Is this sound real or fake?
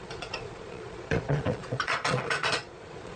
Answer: fake